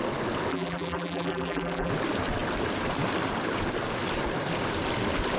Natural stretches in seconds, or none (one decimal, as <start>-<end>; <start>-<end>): 0.0-0.5; 1.9-5.4